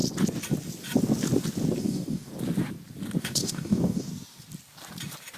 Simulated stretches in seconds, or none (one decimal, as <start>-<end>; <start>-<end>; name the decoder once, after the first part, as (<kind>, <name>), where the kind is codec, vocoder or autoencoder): 1.8-2.3 (codec, DAC); 3.2-4.1